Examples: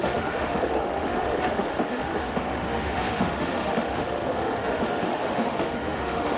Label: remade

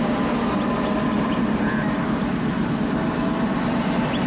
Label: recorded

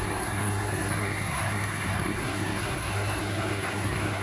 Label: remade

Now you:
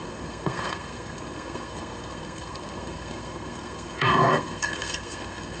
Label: remade